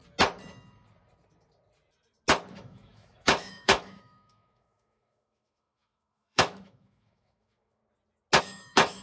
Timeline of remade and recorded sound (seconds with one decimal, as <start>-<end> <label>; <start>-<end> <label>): 0.0-2.5 recorded; 2.5-7.8 remade; 7.8-8.4 recorded; 8.4-9.0 remade